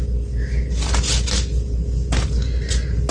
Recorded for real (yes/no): yes